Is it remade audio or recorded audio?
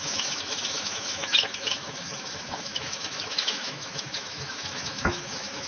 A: remade